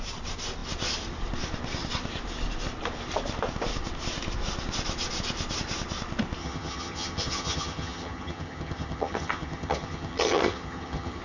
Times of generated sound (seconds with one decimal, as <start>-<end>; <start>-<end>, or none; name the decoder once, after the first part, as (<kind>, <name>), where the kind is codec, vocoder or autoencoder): 6.4-11.2 (vocoder, HiFi-GAN)

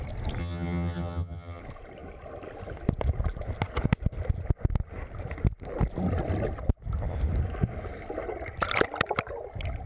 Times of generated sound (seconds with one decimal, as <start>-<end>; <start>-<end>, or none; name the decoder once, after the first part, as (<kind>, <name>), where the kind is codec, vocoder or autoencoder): 0.4-1.6 (vocoder, HiFi-GAN)

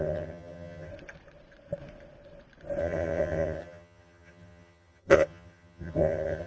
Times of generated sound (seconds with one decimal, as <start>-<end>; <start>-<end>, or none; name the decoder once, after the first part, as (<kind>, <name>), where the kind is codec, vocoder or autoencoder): 0.0-0.9 (vocoder, HiFi-GAN); 2.8-6.5

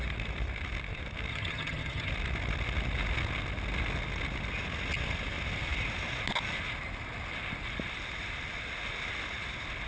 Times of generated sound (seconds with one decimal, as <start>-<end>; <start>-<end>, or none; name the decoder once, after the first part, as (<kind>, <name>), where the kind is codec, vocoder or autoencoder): 1.3-2.1 (vocoder, HiFi-GAN)

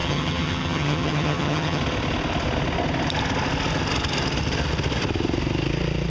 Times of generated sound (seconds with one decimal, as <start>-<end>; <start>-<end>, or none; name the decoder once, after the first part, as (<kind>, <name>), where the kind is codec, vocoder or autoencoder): 0.0-1.8 (vocoder, HiFi-GAN)

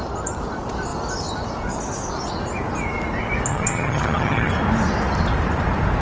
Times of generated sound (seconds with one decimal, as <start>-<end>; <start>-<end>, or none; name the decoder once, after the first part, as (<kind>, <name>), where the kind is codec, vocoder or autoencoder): 3.5-4.5 (vocoder, HiFi-GAN)

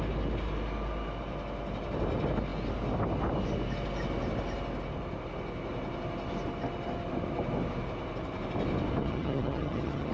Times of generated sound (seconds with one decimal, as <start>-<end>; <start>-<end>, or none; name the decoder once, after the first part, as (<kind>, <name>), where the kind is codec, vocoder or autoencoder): 9.0-10.1 (vocoder, HiFi-GAN)

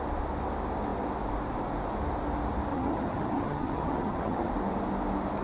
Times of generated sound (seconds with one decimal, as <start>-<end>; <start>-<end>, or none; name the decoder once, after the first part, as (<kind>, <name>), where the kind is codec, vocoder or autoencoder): 2.7-4.5 (vocoder, HiFi-GAN)